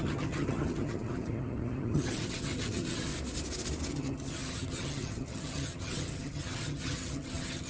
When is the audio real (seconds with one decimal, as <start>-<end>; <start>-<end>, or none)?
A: 3.1-3.9

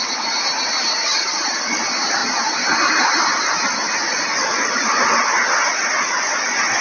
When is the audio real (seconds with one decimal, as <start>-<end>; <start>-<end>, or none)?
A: 0.0-1.0; 1.5-6.8

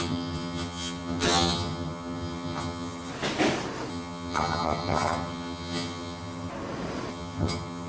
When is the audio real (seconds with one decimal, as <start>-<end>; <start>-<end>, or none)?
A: 3.1-3.9; 6.5-7.1

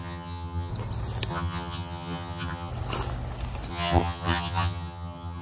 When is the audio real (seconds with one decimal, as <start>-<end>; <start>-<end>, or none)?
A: 0.7-1.3; 2.7-3.7

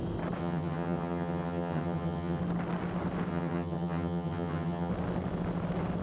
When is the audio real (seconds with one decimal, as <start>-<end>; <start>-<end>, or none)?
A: 0.0-0.4; 2.4-3.3; 4.9-6.0

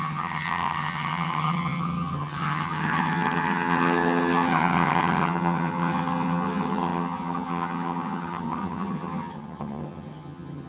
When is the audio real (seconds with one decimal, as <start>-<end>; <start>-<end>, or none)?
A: none

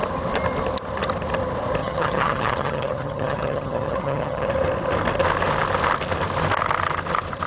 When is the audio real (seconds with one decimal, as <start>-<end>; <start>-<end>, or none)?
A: 0.0-1.8; 4.5-7.5